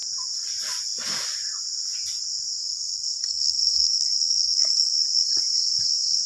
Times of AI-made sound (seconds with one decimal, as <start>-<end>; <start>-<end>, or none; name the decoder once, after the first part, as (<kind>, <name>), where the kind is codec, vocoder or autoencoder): 2.6-4.9 (codec, SNAC)